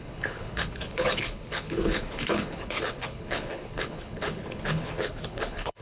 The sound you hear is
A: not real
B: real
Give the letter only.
A